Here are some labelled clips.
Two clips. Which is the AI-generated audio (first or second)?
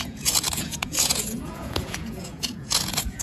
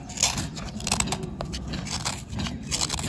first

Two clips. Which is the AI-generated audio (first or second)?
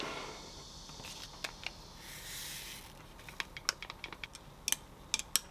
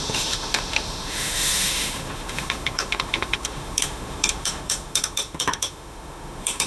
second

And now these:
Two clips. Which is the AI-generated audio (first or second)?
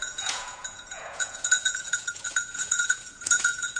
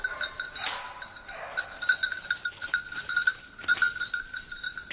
first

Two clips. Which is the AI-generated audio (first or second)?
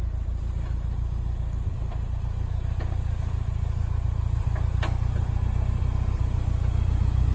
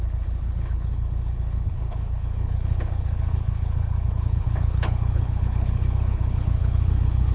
second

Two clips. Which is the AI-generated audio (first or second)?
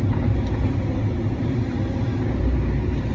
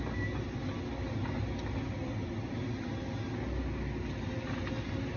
first